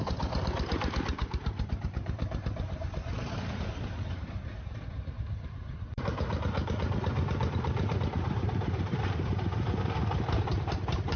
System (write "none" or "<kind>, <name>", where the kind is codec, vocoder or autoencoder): vocoder, BigVGAN v2